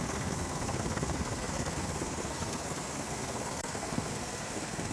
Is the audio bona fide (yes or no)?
no